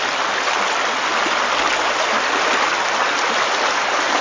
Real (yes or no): yes